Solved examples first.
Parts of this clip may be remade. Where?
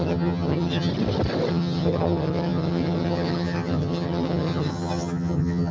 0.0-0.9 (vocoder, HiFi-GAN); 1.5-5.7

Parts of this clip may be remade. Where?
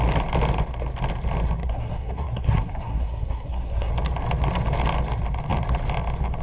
1.6-3.9 (codec, SNAC)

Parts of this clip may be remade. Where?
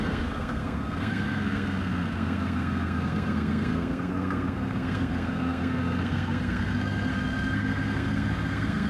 0.0-8.9 (codec, SNAC)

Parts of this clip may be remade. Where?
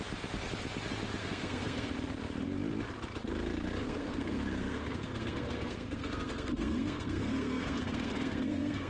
1.2-1.9 (codec, SNAC); 3.8-8.9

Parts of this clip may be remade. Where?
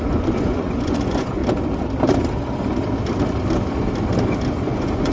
0.0-1.4 (vocoder, Vocos); 4.5-5.1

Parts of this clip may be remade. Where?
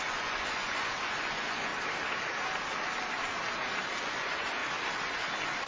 0.0-1.7 (vocoder, Vocos); 4.0-4.6